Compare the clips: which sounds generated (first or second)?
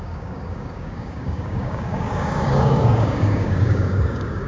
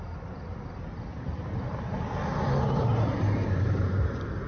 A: first